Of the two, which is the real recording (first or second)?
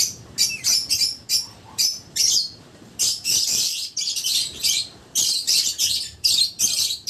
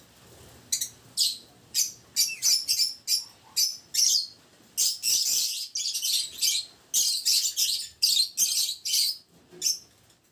second